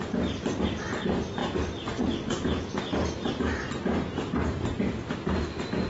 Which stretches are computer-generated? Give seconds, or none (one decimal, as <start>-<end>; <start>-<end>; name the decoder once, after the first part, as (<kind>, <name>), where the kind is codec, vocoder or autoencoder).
none